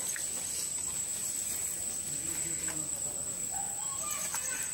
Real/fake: real